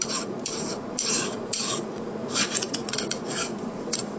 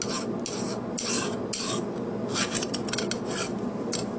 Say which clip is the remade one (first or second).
first